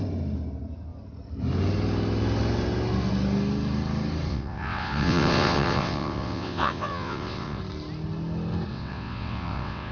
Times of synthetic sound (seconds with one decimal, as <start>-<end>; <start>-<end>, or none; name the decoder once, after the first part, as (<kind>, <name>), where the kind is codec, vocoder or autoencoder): 4.3-7.6 (vocoder, WaveNeXt); 8.7-9.9